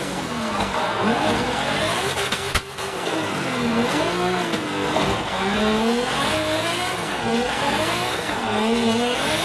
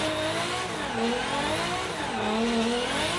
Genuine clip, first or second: second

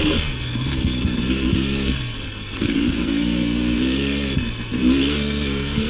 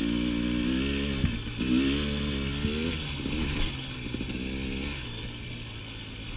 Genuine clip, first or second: second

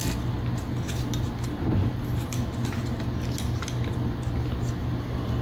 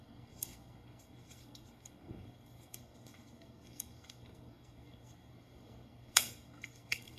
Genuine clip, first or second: first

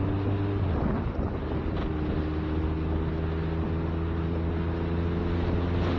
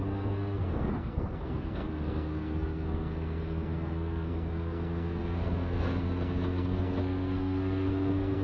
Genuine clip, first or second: first